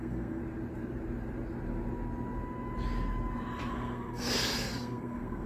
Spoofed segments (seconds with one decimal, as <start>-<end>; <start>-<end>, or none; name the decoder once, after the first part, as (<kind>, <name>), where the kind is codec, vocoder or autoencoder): 0.0-0.4 (codec, SNAC); 3.7-5.5